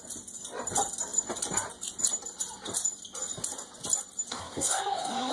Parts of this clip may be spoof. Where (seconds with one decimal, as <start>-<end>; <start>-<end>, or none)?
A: 4.3-5.3